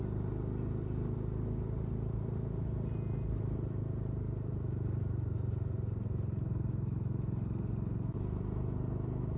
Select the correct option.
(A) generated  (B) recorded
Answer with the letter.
B